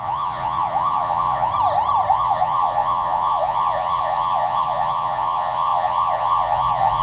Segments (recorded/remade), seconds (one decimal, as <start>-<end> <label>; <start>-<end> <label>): 0.0-1.5 remade; 1.5-2.1 recorded; 2.1-7.0 remade